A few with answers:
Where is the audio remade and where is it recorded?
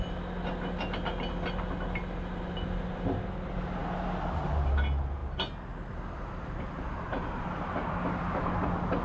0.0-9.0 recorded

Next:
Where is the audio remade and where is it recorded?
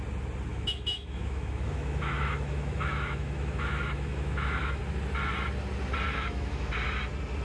0.0-0.5 recorded; 0.5-4.8 remade; 4.8-6.1 recorded; 6.1-6.7 remade; 6.7-7.4 recorded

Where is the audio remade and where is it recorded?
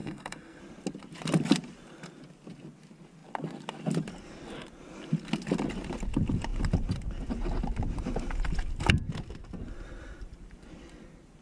0.0-0.6 remade; 0.6-11.4 recorded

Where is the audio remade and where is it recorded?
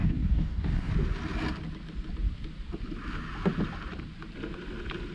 0.0-0.9 remade; 0.9-5.1 recorded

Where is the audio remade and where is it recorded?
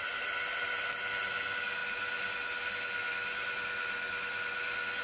0.0-5.0 recorded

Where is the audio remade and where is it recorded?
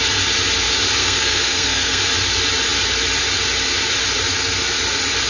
0.0-1.0 recorded; 1.0-2.0 remade; 2.0-5.3 recorded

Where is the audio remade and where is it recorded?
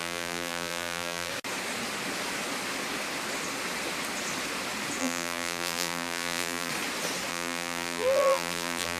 0.0-1.3 remade; 1.3-5.0 recorded; 5.0-6.7 remade; 6.7-7.3 recorded; 7.3-9.0 remade